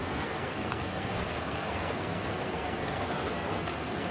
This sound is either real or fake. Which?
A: fake